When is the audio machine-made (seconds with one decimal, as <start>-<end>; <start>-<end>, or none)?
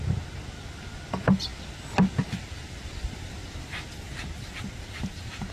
none